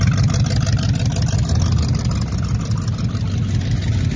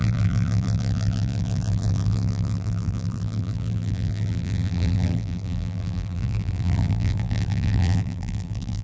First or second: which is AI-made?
second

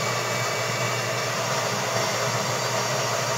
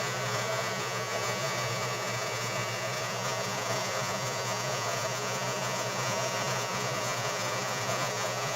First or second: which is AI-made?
second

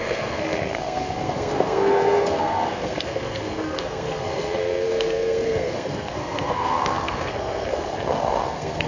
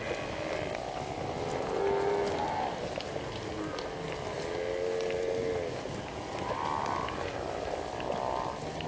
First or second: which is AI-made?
first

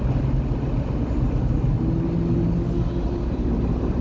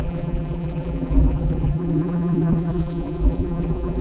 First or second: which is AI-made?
second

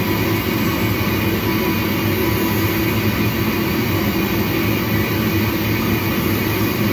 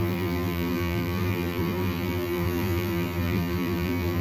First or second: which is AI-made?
second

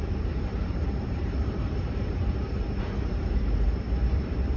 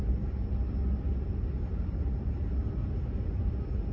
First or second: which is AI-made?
first